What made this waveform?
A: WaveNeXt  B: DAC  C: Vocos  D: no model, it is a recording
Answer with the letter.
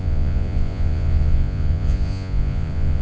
C